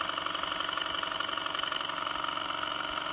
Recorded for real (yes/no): yes